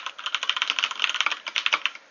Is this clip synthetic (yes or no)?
no